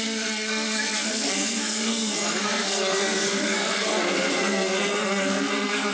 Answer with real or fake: fake